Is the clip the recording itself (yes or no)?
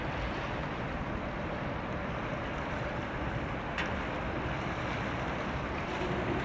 yes